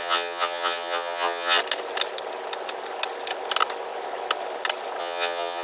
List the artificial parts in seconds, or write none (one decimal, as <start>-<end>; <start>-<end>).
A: 0.0-1.6; 5.0-5.6